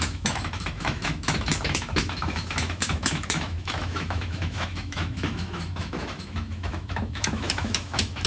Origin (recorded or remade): remade